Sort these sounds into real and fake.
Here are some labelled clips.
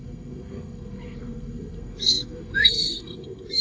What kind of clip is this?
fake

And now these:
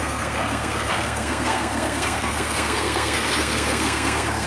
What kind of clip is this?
fake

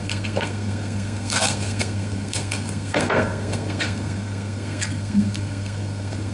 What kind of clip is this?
fake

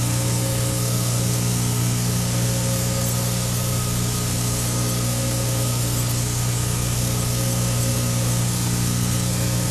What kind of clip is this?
fake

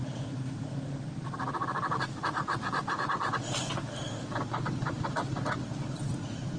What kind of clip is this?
real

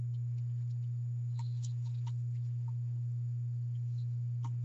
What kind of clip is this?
real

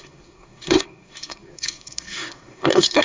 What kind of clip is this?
fake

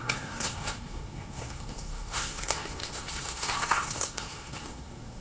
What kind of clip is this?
fake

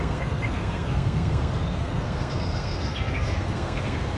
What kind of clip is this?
fake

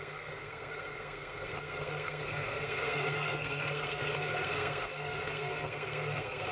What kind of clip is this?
fake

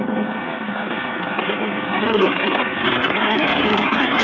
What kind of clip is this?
fake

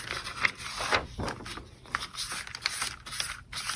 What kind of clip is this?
real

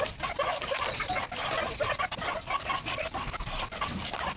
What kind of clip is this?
real